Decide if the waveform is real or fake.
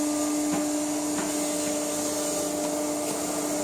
real